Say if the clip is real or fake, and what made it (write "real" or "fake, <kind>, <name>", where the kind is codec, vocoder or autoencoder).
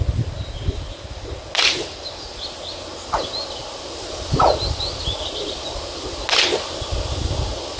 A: real